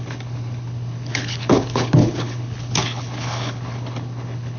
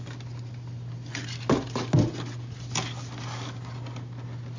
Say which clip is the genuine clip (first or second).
second